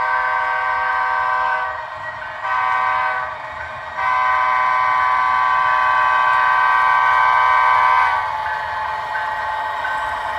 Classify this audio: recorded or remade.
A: recorded